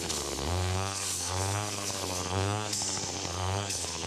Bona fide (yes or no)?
no